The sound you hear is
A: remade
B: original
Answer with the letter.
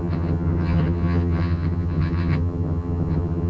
A